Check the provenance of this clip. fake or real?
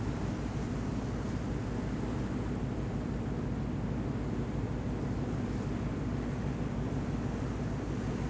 real